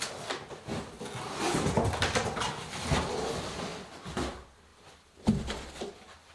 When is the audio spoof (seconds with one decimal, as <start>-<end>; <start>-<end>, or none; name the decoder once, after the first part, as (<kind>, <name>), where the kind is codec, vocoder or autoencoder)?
4.7-5.7 (vocoder, BigVGAN v2)